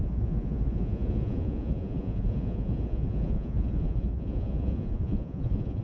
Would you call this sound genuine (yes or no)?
no